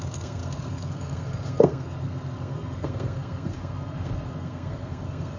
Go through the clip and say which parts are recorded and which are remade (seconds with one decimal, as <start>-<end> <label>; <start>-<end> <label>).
0.0-5.4 remade